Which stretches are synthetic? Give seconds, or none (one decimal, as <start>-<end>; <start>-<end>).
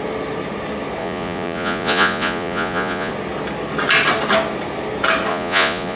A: 1.0-3.1; 5.3-6.0